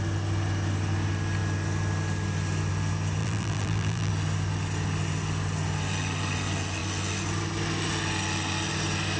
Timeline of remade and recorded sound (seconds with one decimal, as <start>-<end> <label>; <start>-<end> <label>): 0.0-3.2 recorded; 3.2-4.1 remade; 4.1-9.2 recorded